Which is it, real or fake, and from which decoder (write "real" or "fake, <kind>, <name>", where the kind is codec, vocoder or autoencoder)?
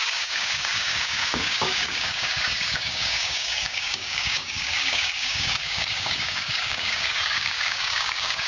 fake, codec, DAC